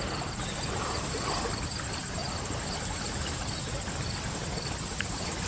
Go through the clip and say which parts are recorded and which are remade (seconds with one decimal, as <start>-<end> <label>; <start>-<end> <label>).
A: 0.0-5.5 recorded